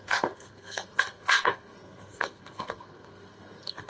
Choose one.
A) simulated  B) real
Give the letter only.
A